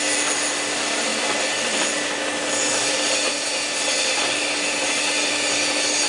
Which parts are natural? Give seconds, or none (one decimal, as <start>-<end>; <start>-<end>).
0.0-6.1